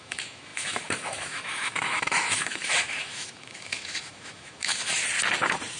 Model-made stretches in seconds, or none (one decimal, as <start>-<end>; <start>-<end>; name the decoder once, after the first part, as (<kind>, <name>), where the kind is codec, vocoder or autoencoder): 0.0-5.0 (autoencoder, DAC-VAE)